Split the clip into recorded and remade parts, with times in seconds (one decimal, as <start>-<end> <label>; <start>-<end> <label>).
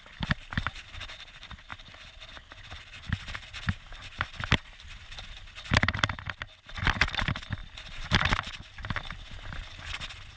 0.0-10.4 recorded